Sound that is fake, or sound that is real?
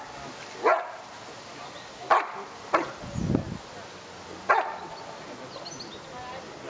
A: real